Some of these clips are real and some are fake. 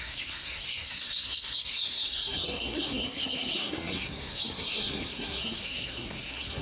fake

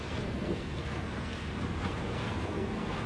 fake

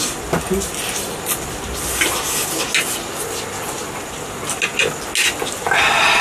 real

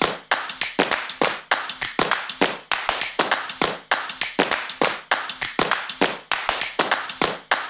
real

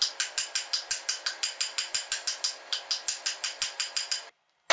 real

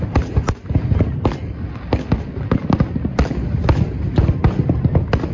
real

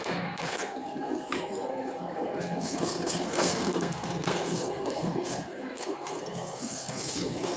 fake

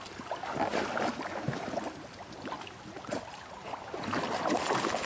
real